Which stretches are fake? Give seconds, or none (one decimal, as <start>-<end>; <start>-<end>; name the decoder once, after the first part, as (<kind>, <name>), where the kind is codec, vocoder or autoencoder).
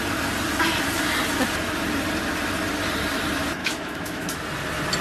3.6-4.4 (autoencoder, DAC-VAE)